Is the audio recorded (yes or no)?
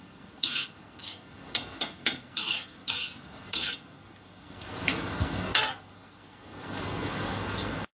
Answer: no